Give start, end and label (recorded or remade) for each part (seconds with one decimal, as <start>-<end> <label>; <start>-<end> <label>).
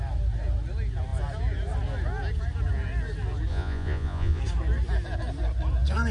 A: 0.0-3.5 recorded; 3.5-4.4 remade; 4.4-6.1 recorded